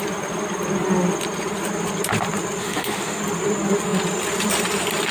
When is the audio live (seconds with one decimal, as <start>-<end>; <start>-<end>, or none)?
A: 0.0-2.6; 3.2-5.1